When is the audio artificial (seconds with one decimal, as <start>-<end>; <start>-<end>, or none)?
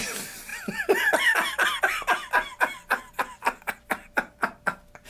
none